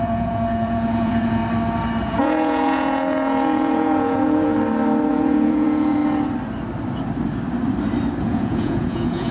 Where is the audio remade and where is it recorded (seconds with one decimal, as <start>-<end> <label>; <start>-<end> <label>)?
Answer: 0.0-1.4 remade; 1.4-2.0 recorded; 2.0-4.5 remade; 4.5-5.1 recorded; 5.1-6.0 remade; 6.0-8.2 recorded; 8.2-9.3 remade